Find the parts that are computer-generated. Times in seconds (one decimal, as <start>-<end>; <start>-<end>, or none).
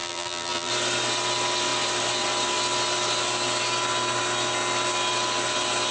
0.0-0.7